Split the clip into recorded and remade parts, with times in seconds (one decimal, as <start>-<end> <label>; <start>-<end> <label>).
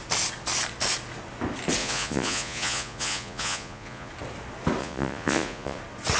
0.0-1.8 recorded; 1.8-4.1 remade; 4.1-4.8 recorded; 4.8-5.8 remade; 5.8-6.2 recorded